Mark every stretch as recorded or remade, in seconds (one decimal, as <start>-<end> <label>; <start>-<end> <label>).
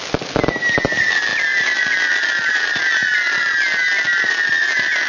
0.0-5.1 recorded